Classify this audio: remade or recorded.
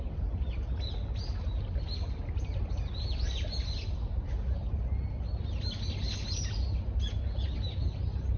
recorded